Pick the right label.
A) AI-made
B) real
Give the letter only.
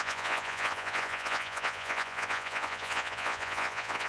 A